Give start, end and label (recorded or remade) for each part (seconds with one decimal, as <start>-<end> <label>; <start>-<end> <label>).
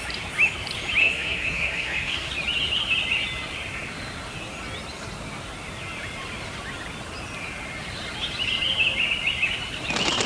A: 0.0-1.0 recorded; 1.0-2.3 remade; 2.3-10.3 recorded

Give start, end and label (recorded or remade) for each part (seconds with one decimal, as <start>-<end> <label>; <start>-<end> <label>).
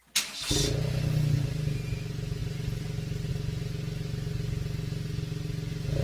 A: 0.0-6.0 recorded